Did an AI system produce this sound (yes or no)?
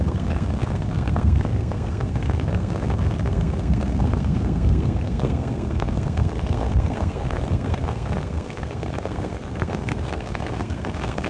yes